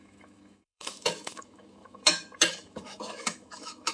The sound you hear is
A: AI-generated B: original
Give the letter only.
A